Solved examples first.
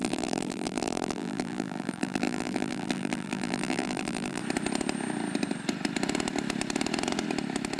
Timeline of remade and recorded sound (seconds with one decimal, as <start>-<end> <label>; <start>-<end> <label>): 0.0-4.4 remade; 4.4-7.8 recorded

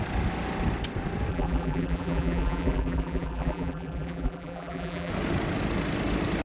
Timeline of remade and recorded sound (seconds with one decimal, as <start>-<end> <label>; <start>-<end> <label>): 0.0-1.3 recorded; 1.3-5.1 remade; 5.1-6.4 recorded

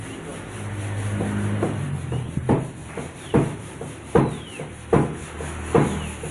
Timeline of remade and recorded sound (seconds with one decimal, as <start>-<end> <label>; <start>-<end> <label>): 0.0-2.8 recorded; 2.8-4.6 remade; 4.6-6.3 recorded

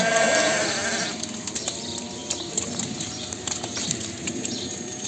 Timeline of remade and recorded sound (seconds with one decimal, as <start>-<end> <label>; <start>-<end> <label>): 0.0-0.8 remade; 0.8-1.5 recorded; 1.5-5.1 remade